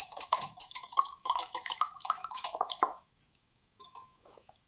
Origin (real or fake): fake